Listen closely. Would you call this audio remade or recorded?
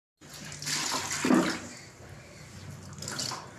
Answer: recorded